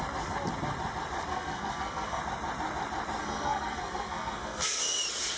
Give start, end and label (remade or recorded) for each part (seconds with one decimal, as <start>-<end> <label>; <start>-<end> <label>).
0.0-1.3 recorded; 1.3-2.2 remade; 2.2-3.2 recorded; 3.2-4.8 remade; 4.8-5.4 recorded